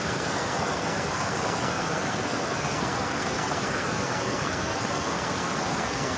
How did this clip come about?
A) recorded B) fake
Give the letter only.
B